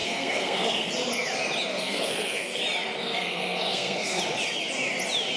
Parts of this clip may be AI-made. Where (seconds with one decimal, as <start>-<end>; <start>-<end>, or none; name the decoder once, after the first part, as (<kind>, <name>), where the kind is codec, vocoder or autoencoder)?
0.0-0.9 (codec, SNAC); 1.7-2.6; 3.0-4.2

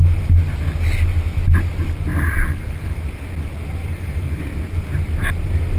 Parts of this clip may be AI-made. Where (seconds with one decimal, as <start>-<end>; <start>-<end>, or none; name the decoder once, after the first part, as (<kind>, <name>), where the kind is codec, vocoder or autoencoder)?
2.1-3.0 (vocoder, BigVGAN v2); 3.8-4.4

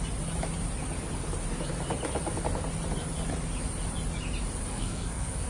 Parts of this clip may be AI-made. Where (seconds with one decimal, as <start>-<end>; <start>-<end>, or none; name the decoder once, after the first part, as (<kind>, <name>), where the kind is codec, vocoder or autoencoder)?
4.7-5.5 (codec, SNAC)

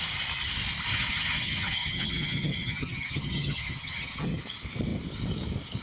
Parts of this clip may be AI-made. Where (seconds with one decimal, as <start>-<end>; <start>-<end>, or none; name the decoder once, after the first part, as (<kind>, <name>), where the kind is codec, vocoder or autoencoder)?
0.9-4.4 (vocoder, HiFi-GAN)

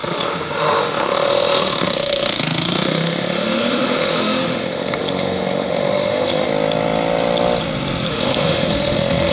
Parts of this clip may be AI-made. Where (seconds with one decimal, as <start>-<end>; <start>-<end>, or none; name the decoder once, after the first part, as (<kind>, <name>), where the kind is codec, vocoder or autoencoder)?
0.0-6.5 (autoencoder, DAC-VAE); 8.1-9.3

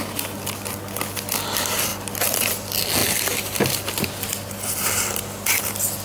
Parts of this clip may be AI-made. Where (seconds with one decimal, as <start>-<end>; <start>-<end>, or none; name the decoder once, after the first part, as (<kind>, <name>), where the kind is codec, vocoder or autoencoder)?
none